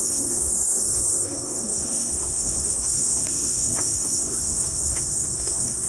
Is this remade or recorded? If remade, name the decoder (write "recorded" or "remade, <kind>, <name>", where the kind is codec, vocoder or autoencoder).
remade, codec, SNAC